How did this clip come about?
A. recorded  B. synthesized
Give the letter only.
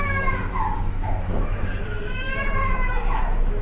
B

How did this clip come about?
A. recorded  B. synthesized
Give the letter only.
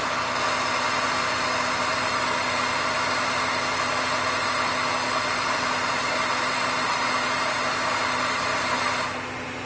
A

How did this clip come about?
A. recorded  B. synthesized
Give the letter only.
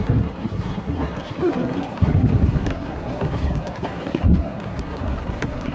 B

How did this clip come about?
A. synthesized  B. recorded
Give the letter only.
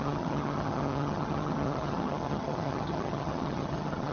A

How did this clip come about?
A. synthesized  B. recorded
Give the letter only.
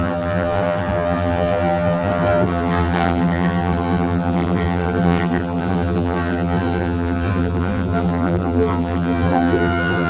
A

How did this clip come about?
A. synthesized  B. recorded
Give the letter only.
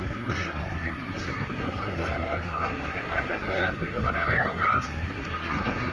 A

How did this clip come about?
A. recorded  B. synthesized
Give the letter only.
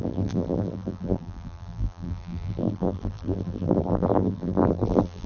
B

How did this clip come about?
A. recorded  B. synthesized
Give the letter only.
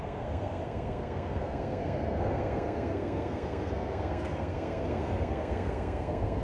B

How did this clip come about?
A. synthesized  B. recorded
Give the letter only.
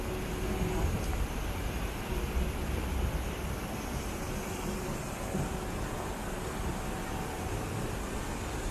B